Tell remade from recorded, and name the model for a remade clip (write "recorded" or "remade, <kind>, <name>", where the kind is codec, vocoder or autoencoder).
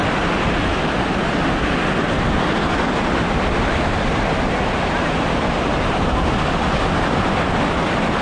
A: recorded